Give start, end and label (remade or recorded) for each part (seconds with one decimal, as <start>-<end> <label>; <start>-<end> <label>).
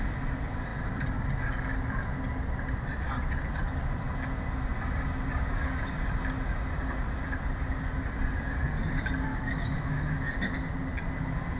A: 0.0-9.3 recorded; 9.3-10.3 remade; 10.3-11.6 recorded